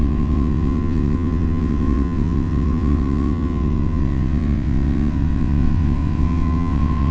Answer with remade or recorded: remade